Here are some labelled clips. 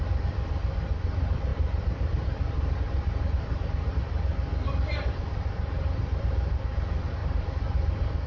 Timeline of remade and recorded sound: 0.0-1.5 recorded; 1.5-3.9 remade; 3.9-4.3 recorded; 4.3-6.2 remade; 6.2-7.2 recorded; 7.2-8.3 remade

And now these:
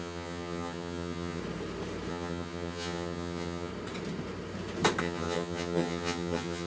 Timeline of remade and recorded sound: 0.0-1.4 remade; 1.4-2.1 recorded; 2.1-3.7 remade; 3.7-5.0 recorded; 5.0-6.7 remade

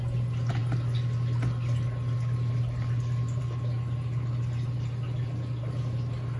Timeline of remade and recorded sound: 0.0-6.4 recorded

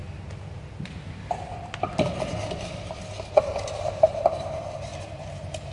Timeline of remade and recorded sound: 0.0-3.4 recorded; 3.4-4.9 remade; 4.9-5.7 recorded

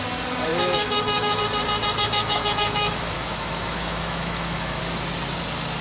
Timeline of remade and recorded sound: 0.0-0.5 recorded; 0.5-1.4 remade; 1.4-2.0 recorded; 2.0-4.8 remade; 4.8-5.8 recorded

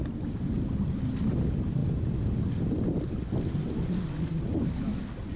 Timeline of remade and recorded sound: 0.0-5.4 recorded

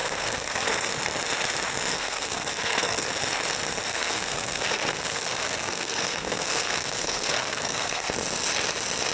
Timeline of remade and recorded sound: 0.0-0.9 remade; 0.9-1.9 recorded; 1.9-3.1 remade; 3.1-3.9 recorded; 3.9-8.1 remade; 8.1-9.1 recorded

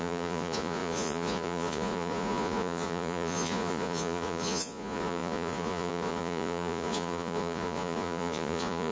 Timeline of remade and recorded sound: 0.0-8.9 remade